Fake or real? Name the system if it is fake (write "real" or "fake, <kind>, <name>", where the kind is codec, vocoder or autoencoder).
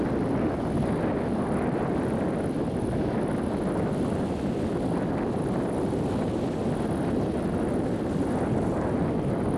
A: real